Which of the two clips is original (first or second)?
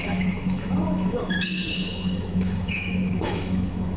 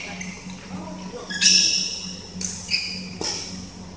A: second